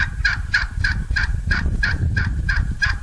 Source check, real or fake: fake